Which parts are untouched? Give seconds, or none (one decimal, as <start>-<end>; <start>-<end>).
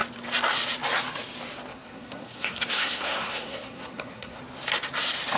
0.0-1.7; 4.4-5.4